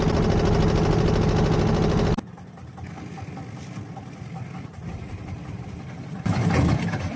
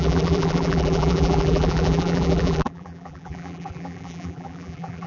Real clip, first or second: first